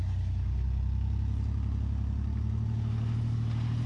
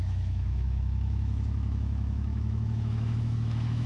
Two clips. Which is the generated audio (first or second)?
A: second